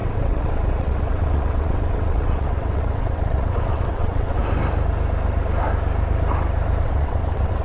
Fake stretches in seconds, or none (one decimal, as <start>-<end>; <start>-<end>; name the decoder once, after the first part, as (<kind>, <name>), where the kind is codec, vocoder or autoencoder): 0.0-4.4 (vocoder, WaveNeXt); 6.8-7.6